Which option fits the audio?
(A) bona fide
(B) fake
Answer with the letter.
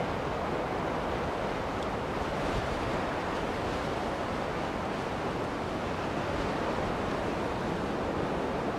A